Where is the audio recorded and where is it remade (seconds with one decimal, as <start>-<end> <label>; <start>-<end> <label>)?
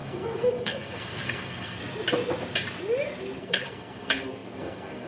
0.0-1.8 remade; 1.8-3.4 recorded; 3.4-5.1 remade